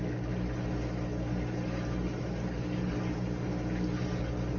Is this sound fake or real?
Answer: real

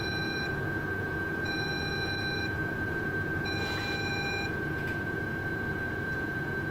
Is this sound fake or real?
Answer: fake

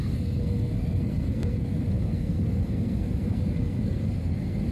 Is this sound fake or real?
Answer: fake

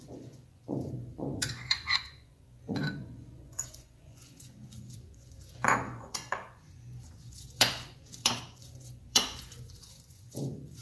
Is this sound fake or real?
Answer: fake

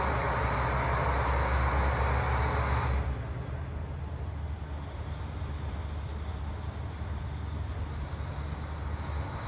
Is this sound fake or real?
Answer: real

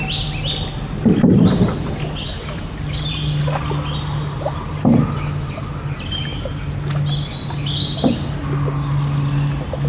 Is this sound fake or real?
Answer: real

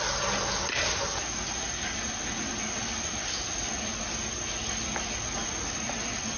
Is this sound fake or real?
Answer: real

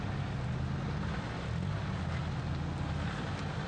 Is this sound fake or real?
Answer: real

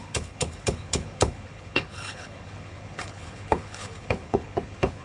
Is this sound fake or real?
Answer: fake